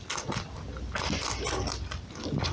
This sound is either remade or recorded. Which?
recorded